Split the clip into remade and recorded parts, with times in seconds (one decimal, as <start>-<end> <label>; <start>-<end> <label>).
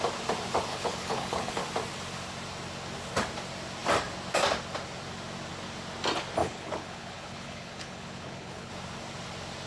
0.0-0.7 recorded; 0.7-1.6 remade; 1.6-6.4 recorded; 6.4-8.7 remade; 8.7-9.7 recorded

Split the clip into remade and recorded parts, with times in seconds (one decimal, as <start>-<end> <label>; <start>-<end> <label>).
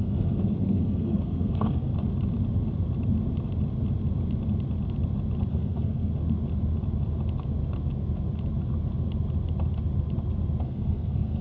0.0-1.9 remade; 1.9-5.5 recorded; 5.5-6.1 remade; 6.1-10.6 recorded; 10.6-11.4 remade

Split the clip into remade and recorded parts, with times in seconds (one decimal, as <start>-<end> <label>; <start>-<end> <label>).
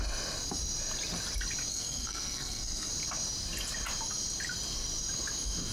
0.0-1.7 recorded; 1.7-2.9 remade; 2.9-5.7 recorded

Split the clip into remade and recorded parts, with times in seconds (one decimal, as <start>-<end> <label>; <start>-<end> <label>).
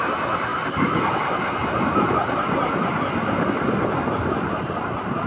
0.0-5.3 recorded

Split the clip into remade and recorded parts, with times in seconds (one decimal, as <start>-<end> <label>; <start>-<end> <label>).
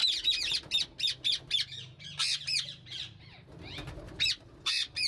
0.0-5.1 recorded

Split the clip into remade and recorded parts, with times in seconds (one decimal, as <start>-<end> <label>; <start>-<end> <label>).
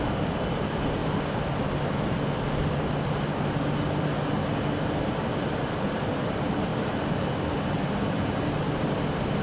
0.0-9.4 recorded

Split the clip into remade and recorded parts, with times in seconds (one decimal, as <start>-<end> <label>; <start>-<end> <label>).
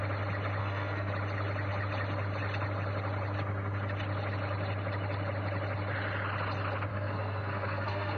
0.0-0.6 recorded; 0.6-1.1 remade; 1.1-6.9 recorded; 6.9-8.2 remade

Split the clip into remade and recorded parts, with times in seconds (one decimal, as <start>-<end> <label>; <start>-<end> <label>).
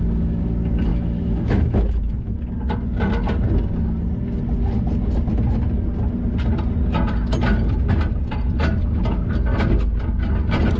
0.0-0.9 recorded; 0.9-2.4 remade; 2.4-10.8 recorded